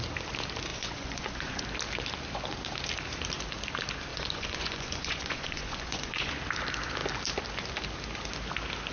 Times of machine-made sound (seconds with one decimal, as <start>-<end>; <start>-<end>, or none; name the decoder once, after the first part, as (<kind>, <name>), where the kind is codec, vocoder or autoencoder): 0.7-1.6 (vocoder, Vocos); 4.1-6.3